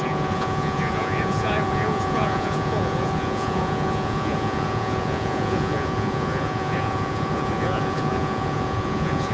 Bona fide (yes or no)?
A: no